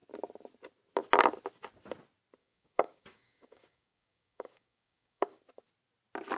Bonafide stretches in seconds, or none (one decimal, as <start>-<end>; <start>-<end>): 0.0-2.4; 5.4-6.4